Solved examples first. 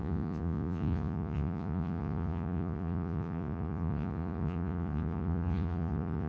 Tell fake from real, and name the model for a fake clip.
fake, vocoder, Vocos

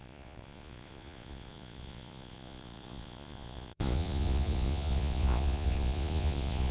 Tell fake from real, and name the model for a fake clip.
fake, vocoder, Vocos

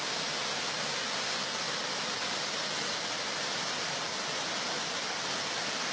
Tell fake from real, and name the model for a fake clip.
real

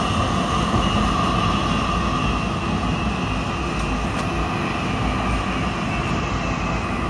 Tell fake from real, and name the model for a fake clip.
real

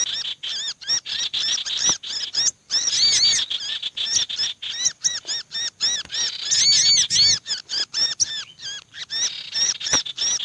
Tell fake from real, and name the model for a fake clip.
real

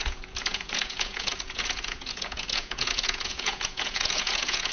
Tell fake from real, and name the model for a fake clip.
fake, vocoder, Vocos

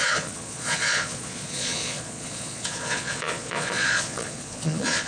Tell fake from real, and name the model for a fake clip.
fake, vocoder, Vocos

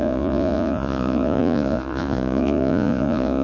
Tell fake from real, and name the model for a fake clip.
fake, vocoder, Vocos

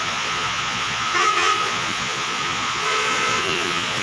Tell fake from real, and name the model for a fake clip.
fake, vocoder, Vocos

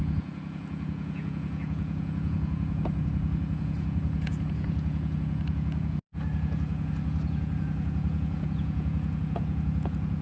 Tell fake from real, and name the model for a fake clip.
fake, vocoder, Vocos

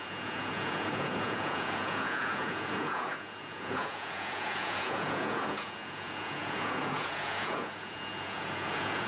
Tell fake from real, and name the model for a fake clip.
fake, vocoder, Vocos